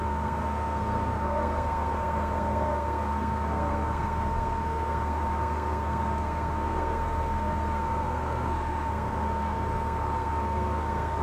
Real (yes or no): no